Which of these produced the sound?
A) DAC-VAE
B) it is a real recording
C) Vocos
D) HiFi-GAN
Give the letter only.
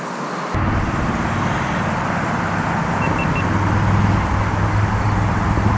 B